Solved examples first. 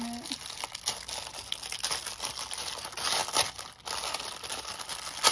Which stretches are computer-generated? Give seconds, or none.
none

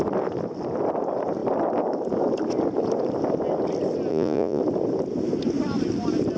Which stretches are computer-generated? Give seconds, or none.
4.1-4.6 (vocoder, Vocos)

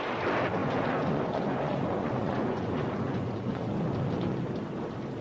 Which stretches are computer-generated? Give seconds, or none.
0.6-3.7 (vocoder, Vocos)

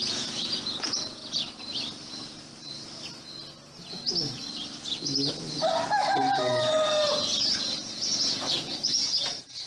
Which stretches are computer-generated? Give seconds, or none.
0.0-1.2 (vocoder, Vocos); 2.1-2.5; 7.1-9.7

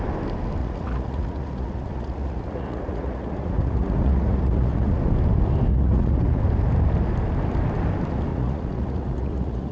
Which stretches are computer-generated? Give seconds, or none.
0.6-5.0 (vocoder, Vocos); 5.7-6.4; 8.3-9.7

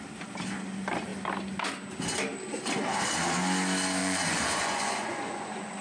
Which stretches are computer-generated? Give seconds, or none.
4.0-5.8 (vocoder, Vocos)

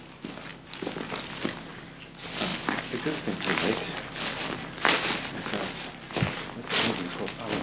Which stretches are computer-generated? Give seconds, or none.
none

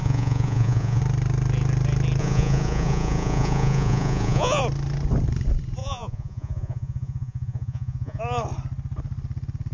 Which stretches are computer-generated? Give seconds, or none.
0.0-1.0 (vocoder, Vocos); 2.2-4.6; 5.8-8.2